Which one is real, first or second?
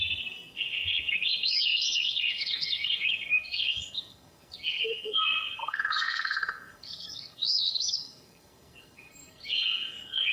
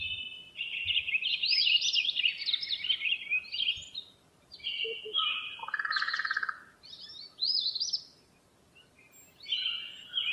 second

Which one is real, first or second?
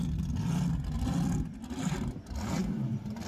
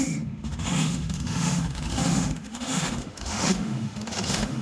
first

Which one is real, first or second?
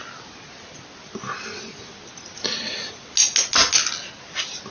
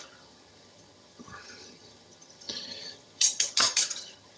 first